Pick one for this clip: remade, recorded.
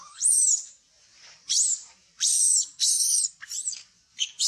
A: remade